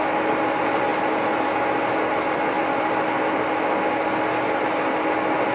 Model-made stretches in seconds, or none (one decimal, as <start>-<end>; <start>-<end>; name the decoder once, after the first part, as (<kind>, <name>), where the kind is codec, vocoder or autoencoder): none